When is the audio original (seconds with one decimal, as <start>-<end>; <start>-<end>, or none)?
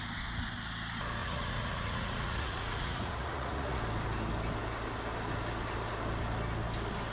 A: 0.0-1.2; 3.8-7.1